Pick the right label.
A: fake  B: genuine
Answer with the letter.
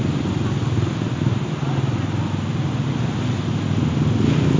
B